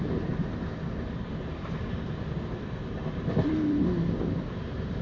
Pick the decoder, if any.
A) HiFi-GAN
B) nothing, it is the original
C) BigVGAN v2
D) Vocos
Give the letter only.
B